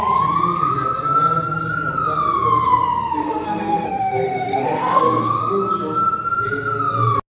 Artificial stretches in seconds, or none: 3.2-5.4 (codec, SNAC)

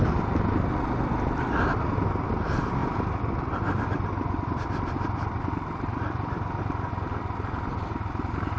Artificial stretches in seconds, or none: 2.8-6.6 (vocoder, BigVGAN v2)

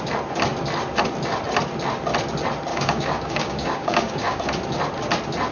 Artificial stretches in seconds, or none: 2.7-4.4 (codec, DAC)